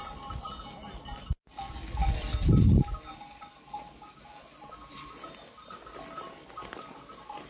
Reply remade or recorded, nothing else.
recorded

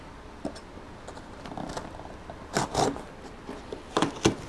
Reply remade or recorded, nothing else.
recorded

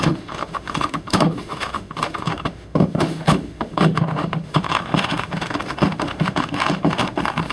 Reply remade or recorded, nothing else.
remade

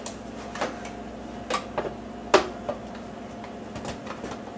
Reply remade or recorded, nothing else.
recorded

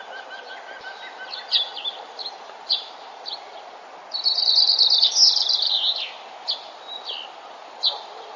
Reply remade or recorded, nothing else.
recorded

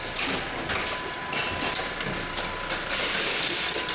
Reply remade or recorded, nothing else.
recorded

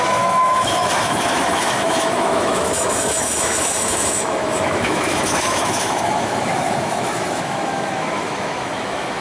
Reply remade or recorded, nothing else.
remade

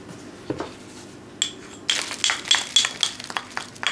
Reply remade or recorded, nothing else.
recorded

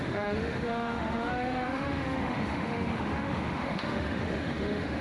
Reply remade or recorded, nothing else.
remade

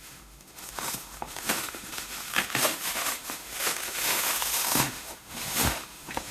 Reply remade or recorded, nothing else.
remade